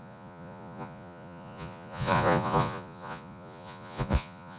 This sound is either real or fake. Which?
fake